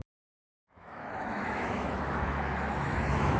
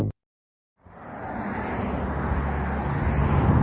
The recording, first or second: second